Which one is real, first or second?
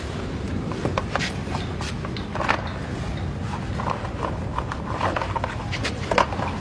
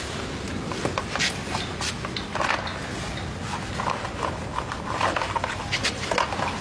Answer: second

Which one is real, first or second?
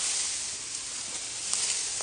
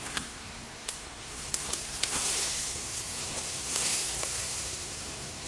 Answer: first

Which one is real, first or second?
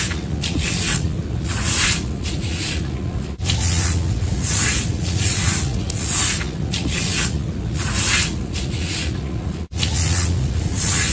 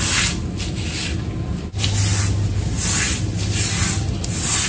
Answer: second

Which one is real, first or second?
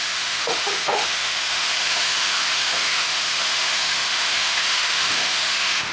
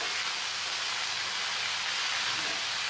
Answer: second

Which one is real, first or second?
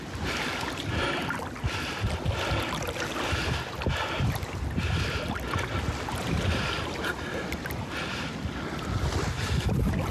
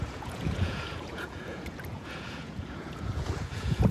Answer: first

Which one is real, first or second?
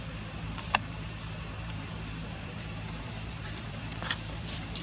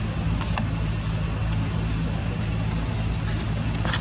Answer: second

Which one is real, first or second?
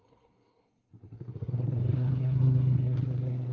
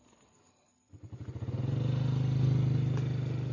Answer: second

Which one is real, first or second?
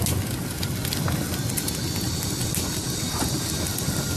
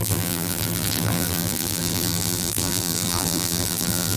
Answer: first